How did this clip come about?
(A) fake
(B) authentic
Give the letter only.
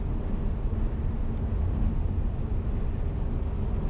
B